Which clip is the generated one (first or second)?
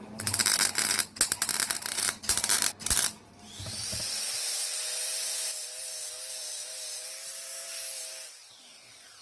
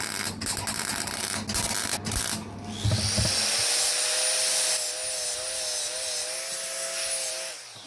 first